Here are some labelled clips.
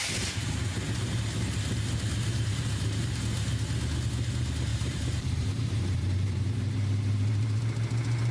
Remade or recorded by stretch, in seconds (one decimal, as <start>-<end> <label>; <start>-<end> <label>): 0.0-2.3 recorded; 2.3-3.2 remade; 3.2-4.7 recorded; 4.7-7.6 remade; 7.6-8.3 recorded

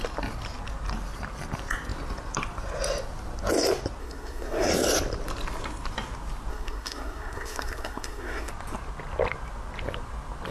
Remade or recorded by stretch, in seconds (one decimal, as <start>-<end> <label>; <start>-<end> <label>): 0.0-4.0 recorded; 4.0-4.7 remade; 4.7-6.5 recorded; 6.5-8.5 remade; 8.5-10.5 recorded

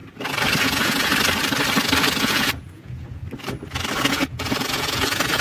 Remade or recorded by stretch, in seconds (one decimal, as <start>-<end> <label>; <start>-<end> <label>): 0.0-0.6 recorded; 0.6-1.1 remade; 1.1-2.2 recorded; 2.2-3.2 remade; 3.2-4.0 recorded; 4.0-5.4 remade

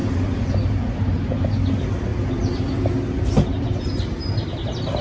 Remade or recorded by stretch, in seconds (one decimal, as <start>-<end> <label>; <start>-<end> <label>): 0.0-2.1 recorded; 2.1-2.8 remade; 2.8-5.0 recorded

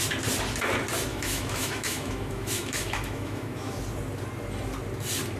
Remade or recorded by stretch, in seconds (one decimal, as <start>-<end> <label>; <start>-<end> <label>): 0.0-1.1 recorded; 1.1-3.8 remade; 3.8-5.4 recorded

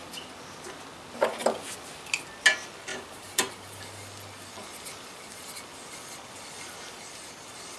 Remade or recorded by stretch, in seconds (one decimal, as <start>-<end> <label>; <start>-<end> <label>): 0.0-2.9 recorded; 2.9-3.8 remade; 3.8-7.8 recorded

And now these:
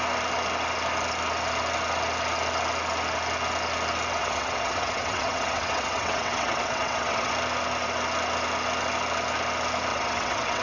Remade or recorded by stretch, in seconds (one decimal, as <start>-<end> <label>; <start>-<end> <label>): 0.0-4.2 recorded; 4.2-7.3 remade; 7.3-9.9 recorded; 9.9-10.6 remade